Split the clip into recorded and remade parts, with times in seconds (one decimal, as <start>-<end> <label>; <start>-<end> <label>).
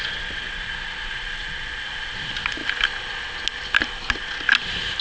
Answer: 0.0-5.0 recorded